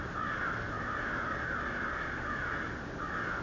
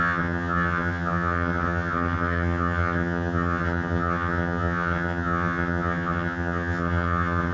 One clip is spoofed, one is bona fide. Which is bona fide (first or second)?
first